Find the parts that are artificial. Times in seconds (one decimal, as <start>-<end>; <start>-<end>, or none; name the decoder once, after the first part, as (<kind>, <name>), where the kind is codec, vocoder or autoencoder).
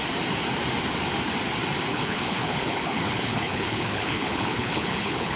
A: 1.9-5.4 (codec, HILCodec)